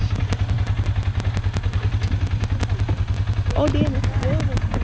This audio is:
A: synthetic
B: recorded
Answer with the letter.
B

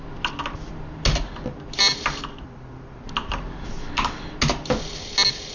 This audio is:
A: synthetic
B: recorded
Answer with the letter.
B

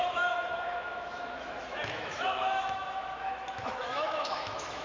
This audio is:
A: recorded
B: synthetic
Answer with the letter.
B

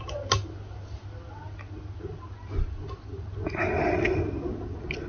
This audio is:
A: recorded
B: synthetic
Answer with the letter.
A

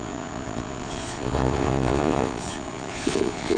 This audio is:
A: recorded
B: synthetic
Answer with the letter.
B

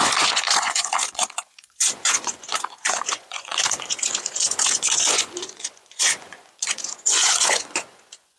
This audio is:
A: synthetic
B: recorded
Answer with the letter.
A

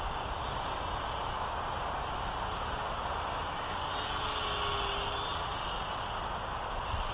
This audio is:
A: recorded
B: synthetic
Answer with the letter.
A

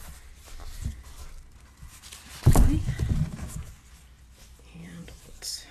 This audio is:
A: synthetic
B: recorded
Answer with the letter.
B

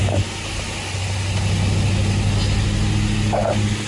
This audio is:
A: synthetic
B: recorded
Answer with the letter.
B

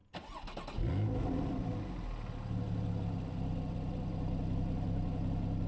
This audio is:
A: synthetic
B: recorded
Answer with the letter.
B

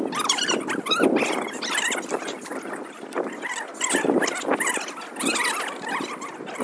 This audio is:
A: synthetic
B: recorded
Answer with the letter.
B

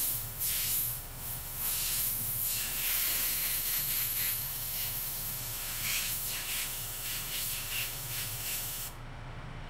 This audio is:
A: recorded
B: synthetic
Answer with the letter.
B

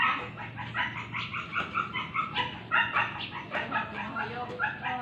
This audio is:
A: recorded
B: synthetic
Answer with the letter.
A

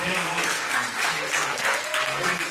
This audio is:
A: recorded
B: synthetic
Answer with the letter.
B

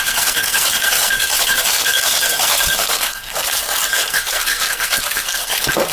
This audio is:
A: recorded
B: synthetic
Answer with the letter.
B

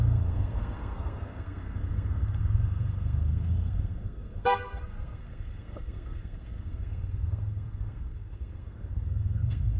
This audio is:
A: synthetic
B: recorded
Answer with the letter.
A